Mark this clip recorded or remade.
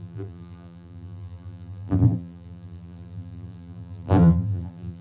remade